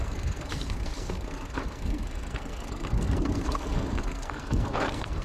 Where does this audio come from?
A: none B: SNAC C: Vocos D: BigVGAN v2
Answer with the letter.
B